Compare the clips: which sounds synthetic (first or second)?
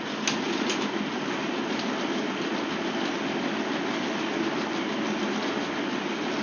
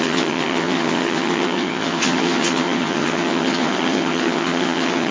second